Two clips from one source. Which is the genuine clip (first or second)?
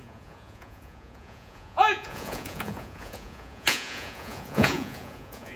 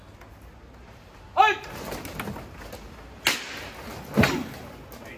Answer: second